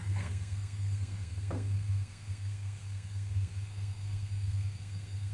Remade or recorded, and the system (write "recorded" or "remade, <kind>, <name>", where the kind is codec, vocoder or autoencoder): remade, codec, SNAC